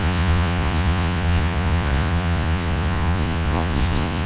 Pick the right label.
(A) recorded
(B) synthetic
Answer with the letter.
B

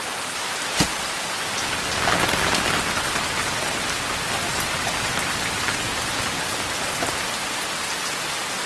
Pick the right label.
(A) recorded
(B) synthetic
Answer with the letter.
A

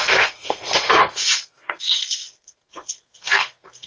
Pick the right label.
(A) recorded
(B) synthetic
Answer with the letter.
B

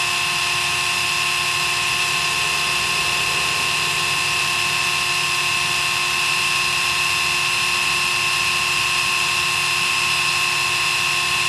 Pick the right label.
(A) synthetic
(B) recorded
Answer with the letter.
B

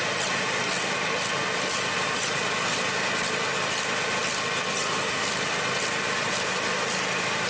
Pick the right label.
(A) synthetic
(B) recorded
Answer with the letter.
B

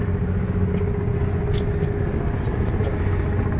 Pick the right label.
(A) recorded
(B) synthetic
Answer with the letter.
A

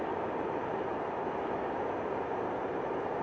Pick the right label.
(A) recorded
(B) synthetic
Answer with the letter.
B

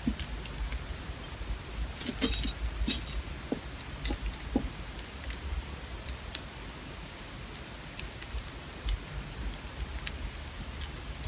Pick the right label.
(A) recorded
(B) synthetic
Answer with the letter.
A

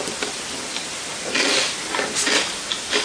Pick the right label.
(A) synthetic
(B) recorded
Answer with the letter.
A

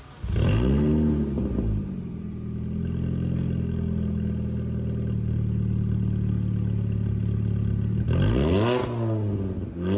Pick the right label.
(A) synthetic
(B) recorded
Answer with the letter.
B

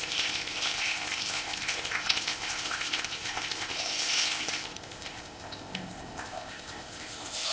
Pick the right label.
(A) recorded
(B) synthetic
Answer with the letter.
B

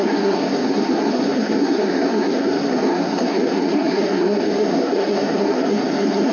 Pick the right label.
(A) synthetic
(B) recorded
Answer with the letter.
A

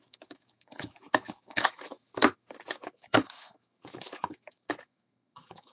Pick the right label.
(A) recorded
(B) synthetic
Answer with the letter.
B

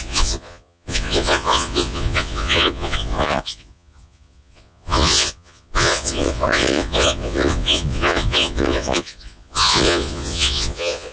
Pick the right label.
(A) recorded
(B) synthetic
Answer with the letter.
B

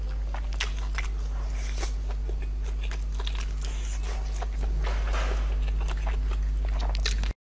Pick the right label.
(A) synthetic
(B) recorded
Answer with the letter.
B